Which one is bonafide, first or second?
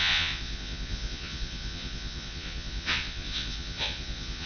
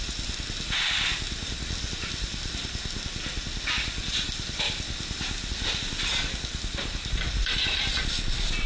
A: second